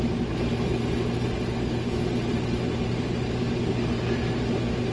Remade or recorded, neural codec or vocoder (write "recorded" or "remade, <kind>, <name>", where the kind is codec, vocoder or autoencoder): recorded